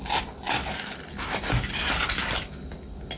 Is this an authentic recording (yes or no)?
yes